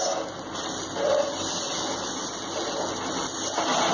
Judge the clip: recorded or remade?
recorded